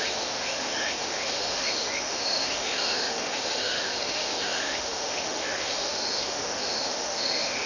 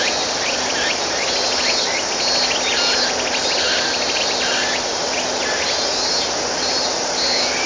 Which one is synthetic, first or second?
first